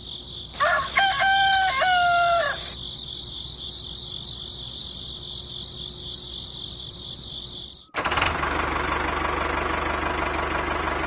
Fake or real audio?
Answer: real